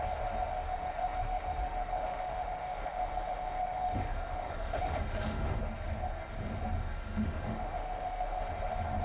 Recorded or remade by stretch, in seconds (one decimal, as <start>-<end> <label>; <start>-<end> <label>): 0.0-0.5 recorded; 0.5-5.6 remade; 5.6-6.8 recorded; 6.8-8.4 remade; 8.4-9.0 recorded